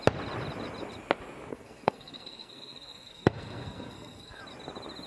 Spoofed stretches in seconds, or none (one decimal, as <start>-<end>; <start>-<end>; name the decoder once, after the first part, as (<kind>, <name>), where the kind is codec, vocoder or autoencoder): 1.5-4.4 (codec, SNAC)